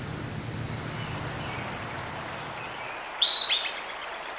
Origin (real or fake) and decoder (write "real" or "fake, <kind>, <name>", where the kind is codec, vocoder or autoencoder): real